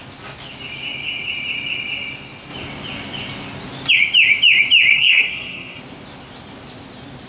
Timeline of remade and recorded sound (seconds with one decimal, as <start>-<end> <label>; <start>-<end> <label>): 0.0-4.9 recorded; 4.9-5.8 remade; 5.8-7.3 recorded